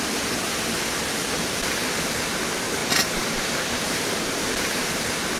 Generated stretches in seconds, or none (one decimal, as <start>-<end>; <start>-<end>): 2.8-4.9

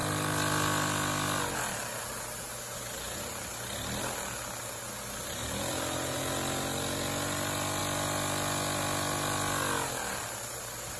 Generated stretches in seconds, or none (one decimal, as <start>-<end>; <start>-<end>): 5.4-6.2

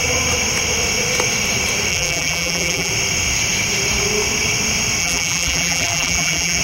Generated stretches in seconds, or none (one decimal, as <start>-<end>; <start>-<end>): 1.9-2.9; 5.0-6.6

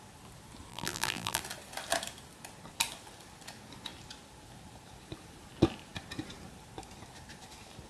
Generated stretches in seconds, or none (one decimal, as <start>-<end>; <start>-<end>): 0.7-1.4

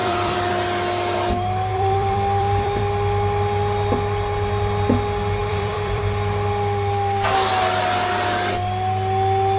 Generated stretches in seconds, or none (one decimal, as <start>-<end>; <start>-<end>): 0.0-0.5; 1.7-2.8; 5.4-6.0

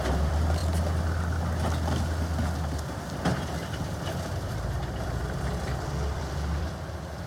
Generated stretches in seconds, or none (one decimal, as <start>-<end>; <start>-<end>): 0.0-0.6; 2.9-7.3

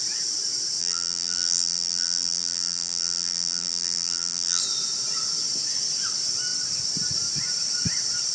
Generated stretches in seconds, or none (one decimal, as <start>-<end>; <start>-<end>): 0.8-4.6